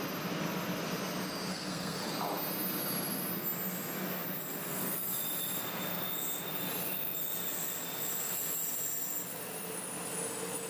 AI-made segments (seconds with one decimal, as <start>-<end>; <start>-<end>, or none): 1.5-2.1